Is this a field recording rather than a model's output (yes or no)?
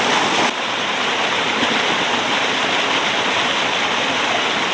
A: yes